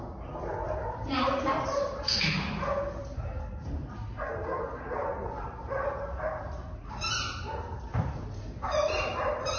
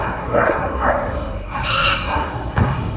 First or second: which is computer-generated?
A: second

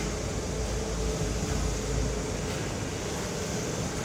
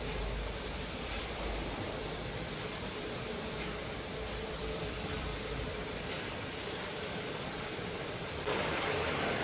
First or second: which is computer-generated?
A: second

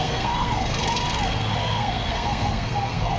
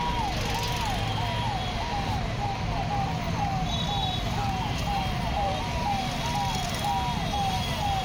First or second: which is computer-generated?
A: first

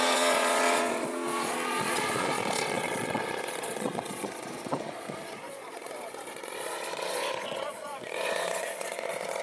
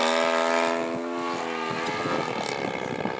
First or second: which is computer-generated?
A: first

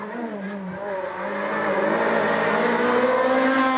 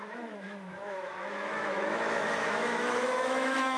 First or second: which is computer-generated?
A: second